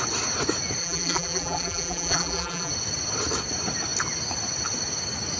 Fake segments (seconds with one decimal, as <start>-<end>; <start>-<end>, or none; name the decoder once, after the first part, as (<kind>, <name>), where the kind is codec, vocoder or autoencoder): 0.8-2.7 (vocoder, BigVGAN v2)